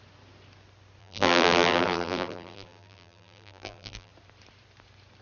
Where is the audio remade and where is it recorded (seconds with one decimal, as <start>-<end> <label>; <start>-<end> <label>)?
0.0-1.0 recorded; 1.0-4.1 remade; 4.1-5.2 recorded